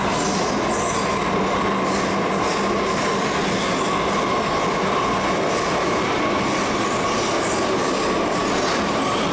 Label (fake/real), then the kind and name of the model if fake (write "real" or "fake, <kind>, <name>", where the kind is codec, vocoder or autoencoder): real